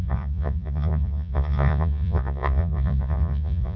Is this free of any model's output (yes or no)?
no